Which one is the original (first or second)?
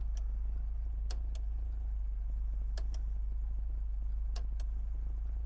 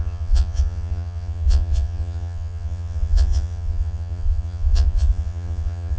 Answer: first